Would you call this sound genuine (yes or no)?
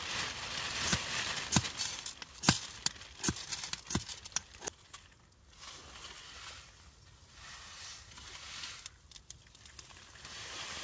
yes